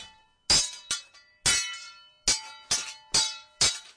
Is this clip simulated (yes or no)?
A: no